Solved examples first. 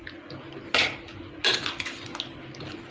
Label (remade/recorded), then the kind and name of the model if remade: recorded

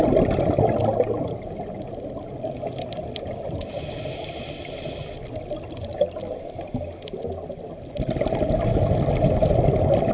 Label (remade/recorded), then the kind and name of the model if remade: recorded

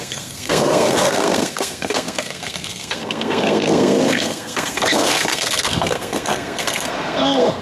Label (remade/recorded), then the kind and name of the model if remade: remade, codec, SNAC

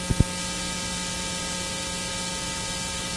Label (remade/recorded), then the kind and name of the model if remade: recorded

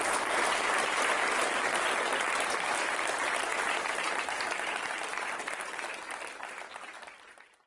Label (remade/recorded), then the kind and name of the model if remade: remade, vocoder, BigVGAN v2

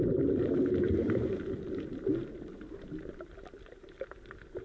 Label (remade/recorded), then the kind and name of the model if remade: recorded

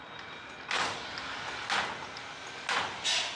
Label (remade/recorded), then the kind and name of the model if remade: recorded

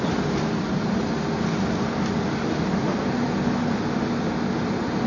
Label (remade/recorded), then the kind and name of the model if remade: recorded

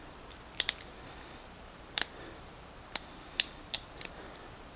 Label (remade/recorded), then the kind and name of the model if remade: remade, vocoder, BigVGAN v2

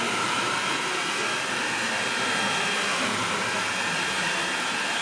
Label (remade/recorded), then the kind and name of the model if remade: recorded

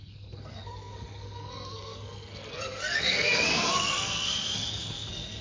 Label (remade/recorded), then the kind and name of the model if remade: remade, codec, SNAC